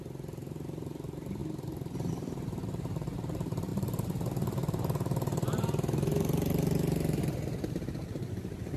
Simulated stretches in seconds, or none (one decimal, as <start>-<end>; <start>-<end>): 0.0-1.4; 2.1-8.8